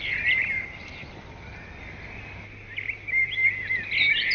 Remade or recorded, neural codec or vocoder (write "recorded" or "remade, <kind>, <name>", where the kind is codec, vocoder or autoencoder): recorded